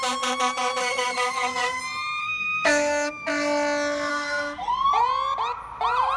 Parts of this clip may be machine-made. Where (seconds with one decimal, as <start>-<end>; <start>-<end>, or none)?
0.8-1.8; 2.2-3.1; 4.1-4.9